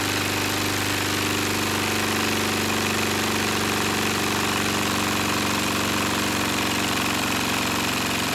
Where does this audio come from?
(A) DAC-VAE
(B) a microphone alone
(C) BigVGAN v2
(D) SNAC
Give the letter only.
B